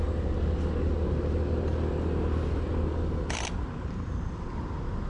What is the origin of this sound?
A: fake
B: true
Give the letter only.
B